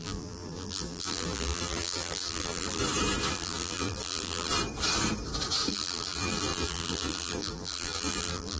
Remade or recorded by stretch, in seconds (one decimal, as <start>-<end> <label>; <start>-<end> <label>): 0.0-2.8 remade; 2.8-3.3 recorded; 3.3-4.5 remade; 4.5-5.7 recorded; 5.7-8.6 remade